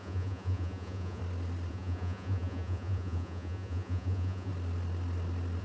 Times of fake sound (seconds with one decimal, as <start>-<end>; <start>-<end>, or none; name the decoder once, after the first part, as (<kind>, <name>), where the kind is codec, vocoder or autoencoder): 0.0-1.2 (vocoder, Vocos); 1.7-4.5